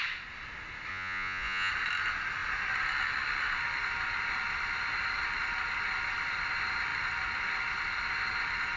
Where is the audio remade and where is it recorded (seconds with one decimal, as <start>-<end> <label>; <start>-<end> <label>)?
0.0-0.9 recorded; 0.9-1.7 remade; 1.7-8.8 recorded